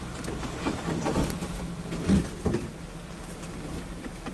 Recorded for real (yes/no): no